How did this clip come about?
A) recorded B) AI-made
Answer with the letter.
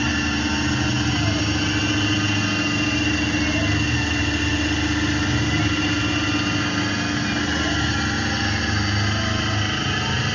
A